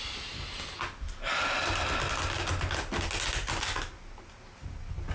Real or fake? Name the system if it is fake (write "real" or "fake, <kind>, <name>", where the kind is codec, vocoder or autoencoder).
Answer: real